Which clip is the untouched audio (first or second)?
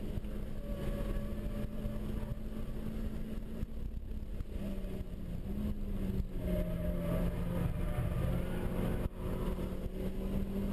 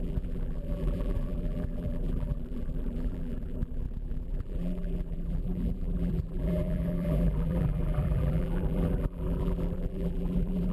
first